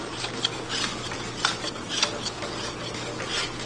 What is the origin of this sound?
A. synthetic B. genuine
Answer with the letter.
B